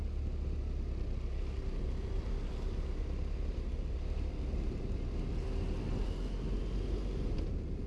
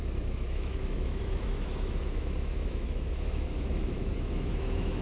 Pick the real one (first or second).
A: first